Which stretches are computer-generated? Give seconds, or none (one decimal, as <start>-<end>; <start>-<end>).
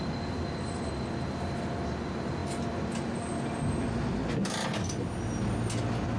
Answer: none